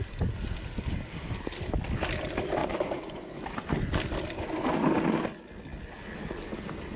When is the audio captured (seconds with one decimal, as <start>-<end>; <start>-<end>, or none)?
0.0-2.6; 3.4-7.0